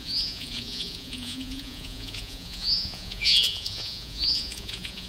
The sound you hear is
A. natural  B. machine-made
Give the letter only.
B